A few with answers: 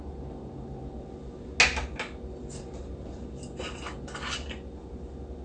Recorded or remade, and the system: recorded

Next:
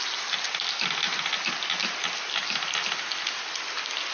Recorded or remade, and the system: recorded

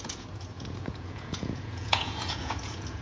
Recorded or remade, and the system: remade, vocoder, Vocos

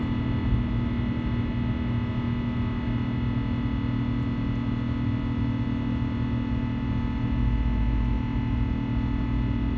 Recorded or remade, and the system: recorded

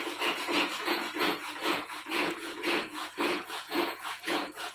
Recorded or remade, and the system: remade, vocoder, Vocos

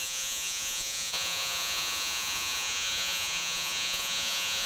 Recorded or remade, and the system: remade, vocoder, Vocos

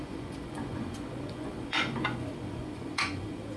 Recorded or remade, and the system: remade, vocoder, Vocos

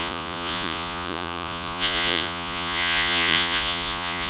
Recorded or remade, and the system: remade, vocoder, Vocos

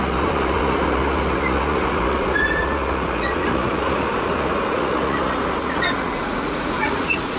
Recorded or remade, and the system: remade, vocoder, Vocos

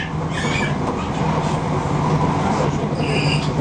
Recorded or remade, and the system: recorded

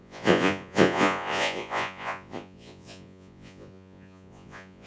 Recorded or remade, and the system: remade, vocoder, Vocos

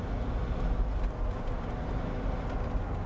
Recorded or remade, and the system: recorded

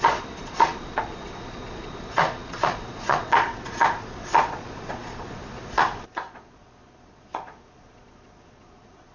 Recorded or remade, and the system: remade, vocoder, Vocos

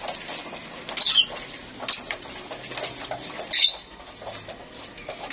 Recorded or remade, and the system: recorded